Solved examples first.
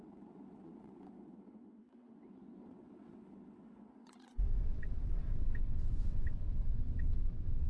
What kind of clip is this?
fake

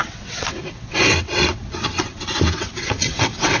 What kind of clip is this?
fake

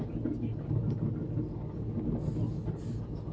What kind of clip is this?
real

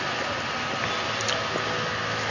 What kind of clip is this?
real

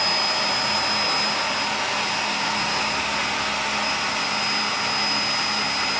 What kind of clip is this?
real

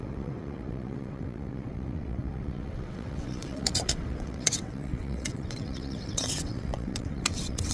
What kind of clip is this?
fake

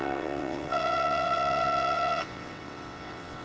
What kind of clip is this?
fake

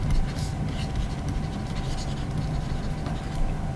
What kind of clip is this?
real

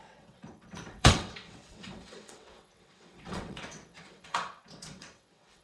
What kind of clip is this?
fake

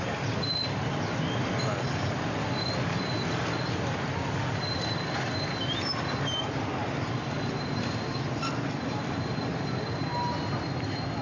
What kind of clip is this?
real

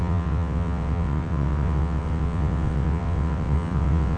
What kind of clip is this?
fake